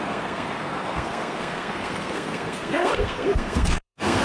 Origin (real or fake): fake